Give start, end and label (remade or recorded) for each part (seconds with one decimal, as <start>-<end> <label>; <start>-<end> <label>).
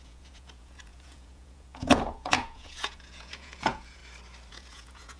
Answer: 0.0-4.0 remade; 4.0-4.5 recorded; 4.5-5.2 remade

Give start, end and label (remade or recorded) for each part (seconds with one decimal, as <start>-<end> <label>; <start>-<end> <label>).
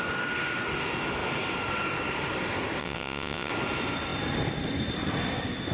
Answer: 0.0-2.8 recorded; 2.8-3.5 remade; 3.5-5.7 recorded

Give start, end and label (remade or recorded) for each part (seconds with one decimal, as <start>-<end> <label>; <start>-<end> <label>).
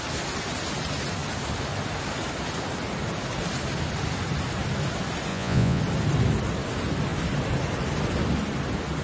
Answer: 0.0-5.3 recorded; 5.3-5.8 remade; 5.8-9.0 recorded